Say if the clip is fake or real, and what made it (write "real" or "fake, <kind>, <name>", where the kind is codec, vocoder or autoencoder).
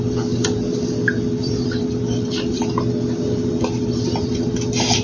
fake, vocoder, BigVGAN v2